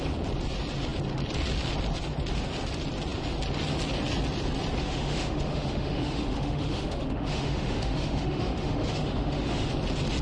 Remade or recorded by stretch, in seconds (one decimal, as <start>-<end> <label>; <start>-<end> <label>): 0.0-4.8 recorded; 4.8-9.7 remade; 9.7-10.2 recorded